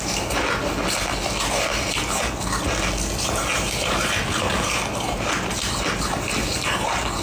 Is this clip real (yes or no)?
yes